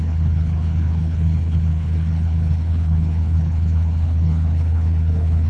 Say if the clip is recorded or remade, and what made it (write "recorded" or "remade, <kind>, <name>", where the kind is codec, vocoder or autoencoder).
remade, codec, HILCodec